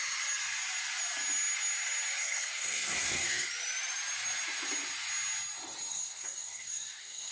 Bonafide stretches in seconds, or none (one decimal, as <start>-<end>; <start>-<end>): 0.0-2.2; 3.5-5.9